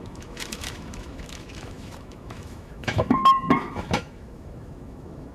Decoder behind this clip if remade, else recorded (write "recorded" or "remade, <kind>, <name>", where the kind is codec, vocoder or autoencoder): remade, autoencoder, DAC-VAE